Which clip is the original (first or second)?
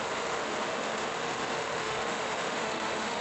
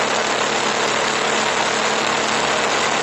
second